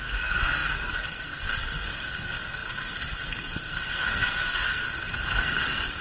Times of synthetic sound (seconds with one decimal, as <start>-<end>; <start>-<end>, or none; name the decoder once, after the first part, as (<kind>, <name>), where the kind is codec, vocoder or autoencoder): 0.0-6.0 (codec, SNAC)